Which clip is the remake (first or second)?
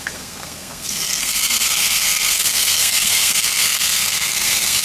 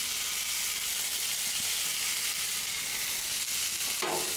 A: first